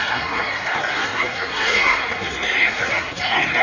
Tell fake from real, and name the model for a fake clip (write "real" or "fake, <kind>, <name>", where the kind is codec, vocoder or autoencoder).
fake, codec, SNAC